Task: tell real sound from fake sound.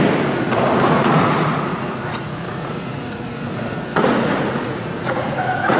fake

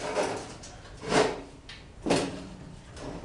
fake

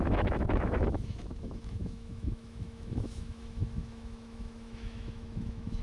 fake